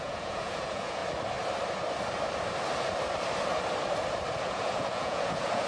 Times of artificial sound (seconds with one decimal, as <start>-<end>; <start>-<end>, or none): 0.0-1.0; 4.4-5.7

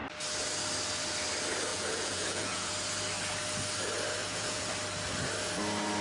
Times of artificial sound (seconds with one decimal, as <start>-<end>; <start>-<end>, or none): 1.7-2.7; 4.2-4.7